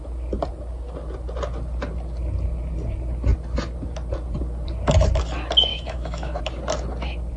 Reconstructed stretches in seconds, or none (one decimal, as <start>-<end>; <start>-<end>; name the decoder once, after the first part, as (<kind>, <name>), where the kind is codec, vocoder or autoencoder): 5.7-6.4 (autoencoder, DAC-VAE)